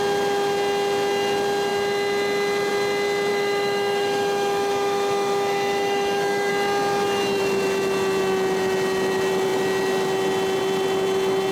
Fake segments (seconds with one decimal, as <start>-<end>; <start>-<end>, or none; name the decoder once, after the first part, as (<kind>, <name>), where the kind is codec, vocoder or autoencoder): 3.3-6.5 (autoencoder, DAC-VAE)